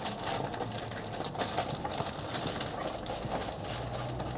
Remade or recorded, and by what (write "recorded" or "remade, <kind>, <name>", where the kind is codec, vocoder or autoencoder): recorded